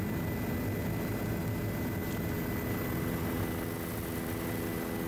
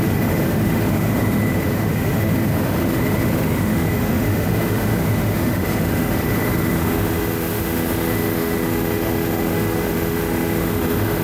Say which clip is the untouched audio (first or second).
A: first